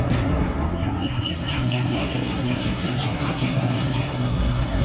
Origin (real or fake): fake